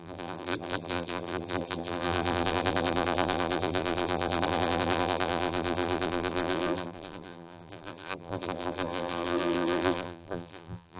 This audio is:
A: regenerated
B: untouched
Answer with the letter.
A